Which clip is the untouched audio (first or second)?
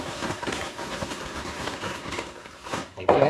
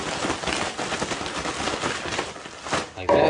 second